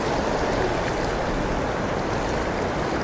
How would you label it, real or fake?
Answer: real